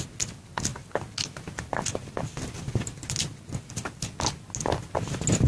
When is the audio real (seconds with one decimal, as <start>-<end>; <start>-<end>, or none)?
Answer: 0.0-5.5